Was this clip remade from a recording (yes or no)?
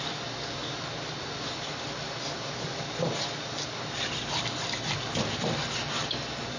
no